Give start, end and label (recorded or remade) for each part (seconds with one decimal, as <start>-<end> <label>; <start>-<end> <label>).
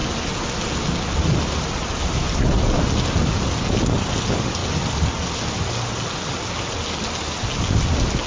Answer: 0.0-8.3 recorded